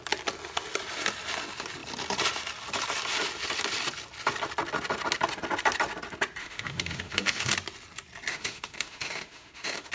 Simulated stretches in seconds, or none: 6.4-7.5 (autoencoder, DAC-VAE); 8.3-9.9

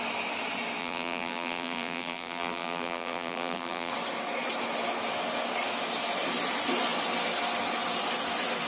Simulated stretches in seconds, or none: 0.8-3.9 (vocoder, BigVGAN v2)

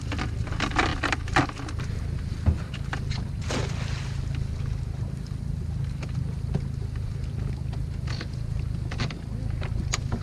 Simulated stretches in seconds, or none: none